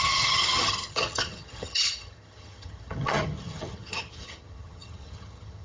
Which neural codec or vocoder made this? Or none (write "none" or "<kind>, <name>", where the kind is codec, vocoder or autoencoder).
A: vocoder, HiFi-GAN